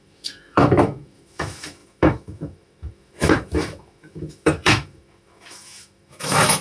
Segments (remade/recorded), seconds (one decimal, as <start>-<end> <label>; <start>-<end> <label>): 0.0-6.6 remade